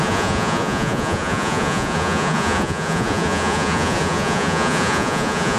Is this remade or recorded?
remade